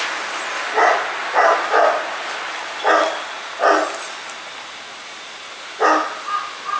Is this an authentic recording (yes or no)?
yes